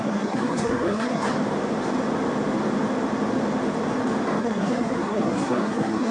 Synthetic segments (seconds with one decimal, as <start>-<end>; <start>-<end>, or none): 0.0-1.3; 4.4-6.1